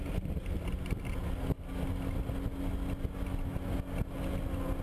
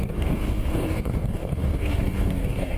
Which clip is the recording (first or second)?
first